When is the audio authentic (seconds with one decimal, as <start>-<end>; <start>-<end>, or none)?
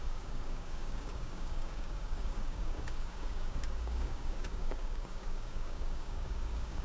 none